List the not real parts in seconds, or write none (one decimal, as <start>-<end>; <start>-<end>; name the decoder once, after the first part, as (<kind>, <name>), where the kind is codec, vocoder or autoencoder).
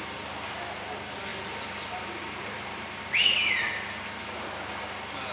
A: 1.3-3.5 (vocoder, BigVGAN v2)